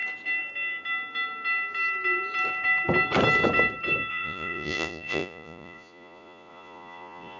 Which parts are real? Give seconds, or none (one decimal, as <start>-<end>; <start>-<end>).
0.0-4.1